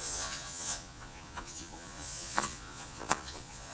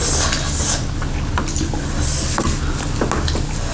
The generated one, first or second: first